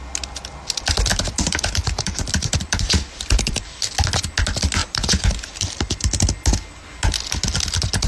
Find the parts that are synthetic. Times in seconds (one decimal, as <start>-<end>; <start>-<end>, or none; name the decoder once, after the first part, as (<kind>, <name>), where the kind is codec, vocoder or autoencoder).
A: 1.1-3.6 (vocoder, BigVGAN v2); 4.8-5.8